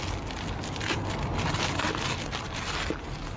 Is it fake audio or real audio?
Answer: real